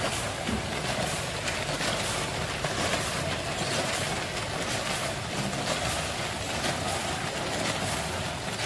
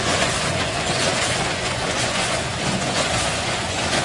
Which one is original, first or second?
first